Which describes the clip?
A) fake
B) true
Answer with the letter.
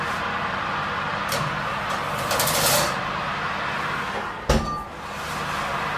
B